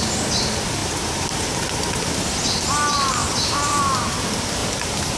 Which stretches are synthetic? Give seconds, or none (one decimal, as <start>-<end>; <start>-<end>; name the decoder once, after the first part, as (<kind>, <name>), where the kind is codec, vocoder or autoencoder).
0.8-2.3 (vocoder, BigVGAN v2); 3.2-3.8; 4.6-5.2